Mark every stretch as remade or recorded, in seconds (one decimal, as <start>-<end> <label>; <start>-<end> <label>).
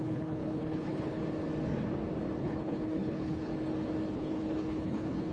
0.0-1.2 remade; 1.2-2.4 recorded; 2.4-3.5 remade; 3.5-4.1 recorded; 4.1-5.3 remade